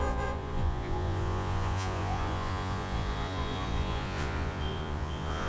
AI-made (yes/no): yes